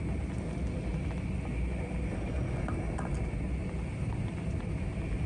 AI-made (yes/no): no